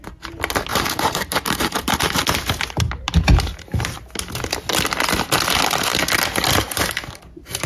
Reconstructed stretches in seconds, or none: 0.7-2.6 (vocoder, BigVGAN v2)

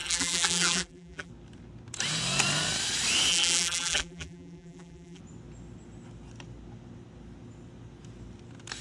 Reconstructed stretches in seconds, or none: 0.0-1.3 (vocoder, BigVGAN v2); 3.3-5.2

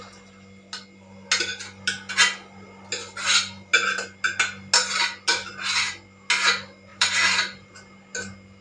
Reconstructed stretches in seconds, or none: 6.9-7.7 (vocoder, BigVGAN v2)

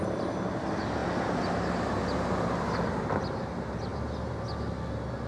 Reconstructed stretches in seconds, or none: none